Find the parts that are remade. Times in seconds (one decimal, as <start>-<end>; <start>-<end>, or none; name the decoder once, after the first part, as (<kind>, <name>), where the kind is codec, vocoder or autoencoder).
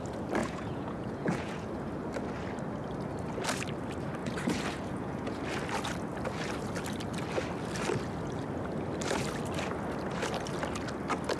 0.4-1.7 (vocoder, Vocos); 4.2-5.4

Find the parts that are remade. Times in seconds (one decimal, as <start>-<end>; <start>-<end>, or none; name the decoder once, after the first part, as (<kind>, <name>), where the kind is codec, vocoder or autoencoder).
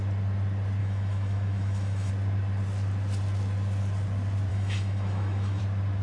0.8-2.1 (autoencoder, DAC-VAE); 4.5-5.6